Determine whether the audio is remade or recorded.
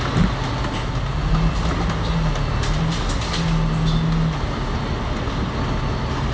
recorded